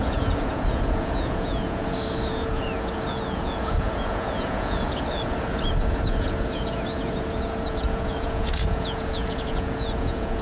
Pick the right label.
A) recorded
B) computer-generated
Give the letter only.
B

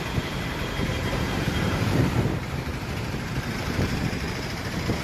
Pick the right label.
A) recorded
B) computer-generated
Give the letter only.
B